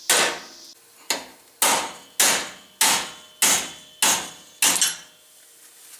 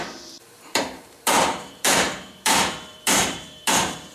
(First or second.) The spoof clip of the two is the second